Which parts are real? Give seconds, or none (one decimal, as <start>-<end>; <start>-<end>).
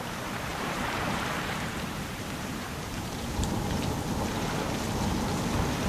0.0-0.5; 3.8-5.9